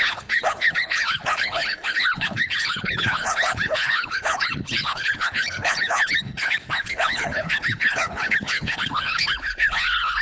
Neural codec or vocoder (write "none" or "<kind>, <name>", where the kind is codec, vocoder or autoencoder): codec, HILCodec